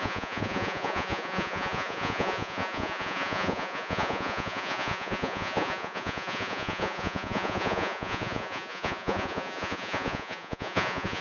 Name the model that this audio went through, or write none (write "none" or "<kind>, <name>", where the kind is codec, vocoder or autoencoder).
vocoder, Vocos